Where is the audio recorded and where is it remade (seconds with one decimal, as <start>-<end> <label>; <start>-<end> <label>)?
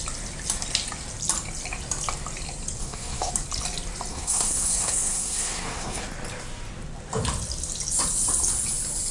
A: 0.0-2.8 recorded; 2.8-3.3 remade; 3.3-4.1 recorded; 4.1-6.0 remade; 6.0-9.1 recorded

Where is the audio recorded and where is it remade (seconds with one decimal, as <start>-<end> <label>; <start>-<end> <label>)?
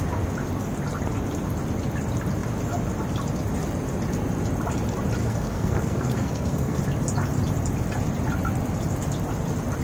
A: 0.0-5.2 recorded; 5.2-6.8 remade; 6.8-9.8 recorded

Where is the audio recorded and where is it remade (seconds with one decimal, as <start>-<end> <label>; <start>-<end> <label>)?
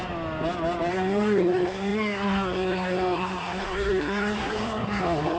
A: 0.0-0.9 recorded; 0.9-5.4 remade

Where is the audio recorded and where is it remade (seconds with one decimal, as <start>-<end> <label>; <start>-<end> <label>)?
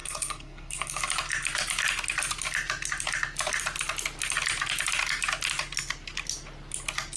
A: 0.0-1.0 remade; 1.0-7.2 recorded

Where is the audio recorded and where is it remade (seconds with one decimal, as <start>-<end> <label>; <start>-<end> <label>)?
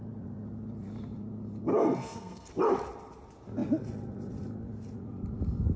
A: 0.0-1.7 recorded; 1.7-2.5 remade; 2.5-5.8 recorded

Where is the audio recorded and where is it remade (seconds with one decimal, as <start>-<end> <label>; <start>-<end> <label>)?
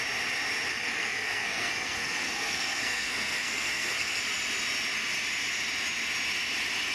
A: 0.0-0.7 recorded; 0.7-4.2 remade; 4.2-6.9 recorded